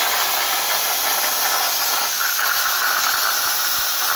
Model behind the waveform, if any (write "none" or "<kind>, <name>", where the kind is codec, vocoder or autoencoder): none